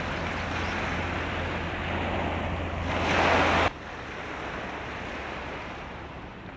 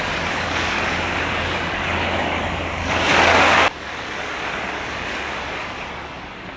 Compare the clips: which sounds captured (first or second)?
first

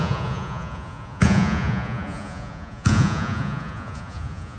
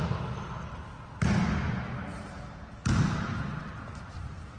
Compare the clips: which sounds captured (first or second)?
second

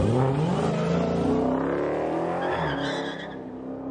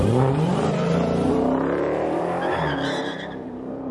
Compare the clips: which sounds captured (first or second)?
first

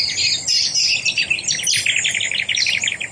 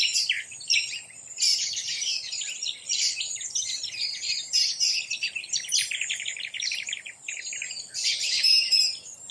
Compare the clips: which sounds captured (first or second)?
first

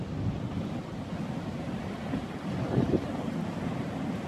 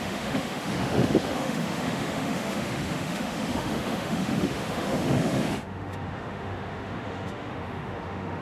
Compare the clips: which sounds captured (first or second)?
first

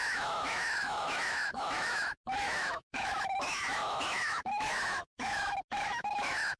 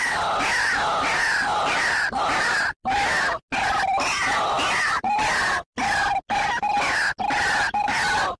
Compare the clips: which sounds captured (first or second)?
second